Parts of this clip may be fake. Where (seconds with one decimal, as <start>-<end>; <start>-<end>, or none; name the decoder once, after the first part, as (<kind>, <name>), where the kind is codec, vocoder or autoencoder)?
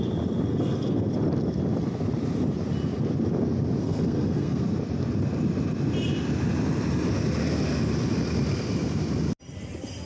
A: 0.5-1.1 (codec, SNAC); 3.8-4.6